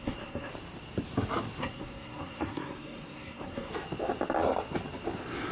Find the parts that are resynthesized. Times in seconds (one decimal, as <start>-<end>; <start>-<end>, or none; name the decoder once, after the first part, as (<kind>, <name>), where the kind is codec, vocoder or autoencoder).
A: 0.0-0.5 (codec, SNAC); 1.6-3.7